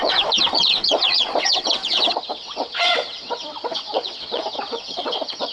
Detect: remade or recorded remade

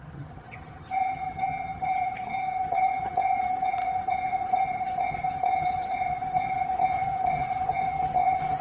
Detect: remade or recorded remade